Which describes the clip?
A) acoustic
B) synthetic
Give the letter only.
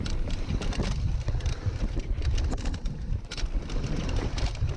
B